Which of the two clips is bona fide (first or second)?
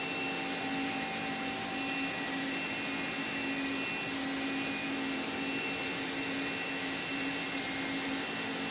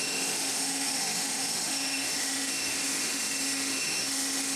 first